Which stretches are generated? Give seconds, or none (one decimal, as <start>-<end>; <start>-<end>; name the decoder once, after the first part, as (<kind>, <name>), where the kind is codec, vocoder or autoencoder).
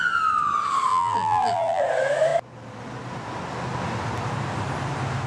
0.9-1.8 (vocoder, BigVGAN v2)